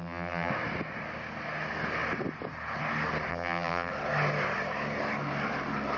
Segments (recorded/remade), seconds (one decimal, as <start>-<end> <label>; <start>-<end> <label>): 0.0-0.5 remade; 0.5-3.3 recorded; 3.3-3.9 remade; 3.9-6.0 recorded